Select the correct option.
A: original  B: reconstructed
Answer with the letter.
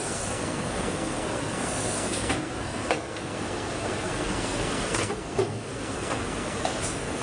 B